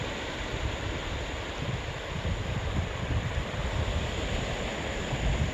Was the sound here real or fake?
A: real